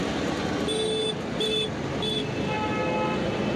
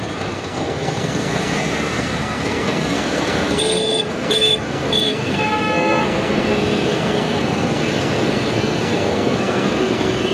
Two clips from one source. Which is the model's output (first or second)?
second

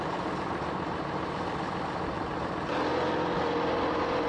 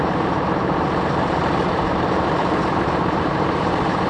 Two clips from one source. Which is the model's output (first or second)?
second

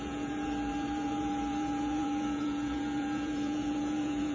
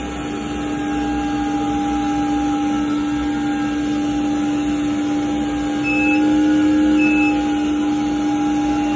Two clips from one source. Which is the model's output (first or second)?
first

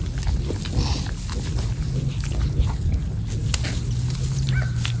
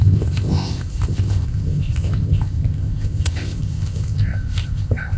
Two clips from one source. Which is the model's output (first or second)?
second